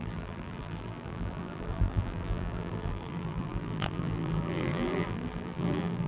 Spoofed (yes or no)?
yes